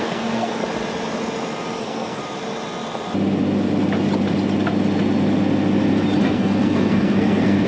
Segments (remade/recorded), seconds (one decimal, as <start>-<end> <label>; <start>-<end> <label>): 0.0-0.6 remade; 0.6-1.8 recorded; 1.8-2.2 remade; 2.2-6.2 recorded; 6.2-7.7 remade